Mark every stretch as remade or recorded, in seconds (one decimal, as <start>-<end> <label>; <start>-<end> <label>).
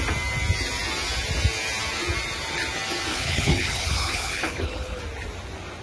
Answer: 0.0-3.1 recorded; 3.1-5.0 remade; 5.0-5.8 recorded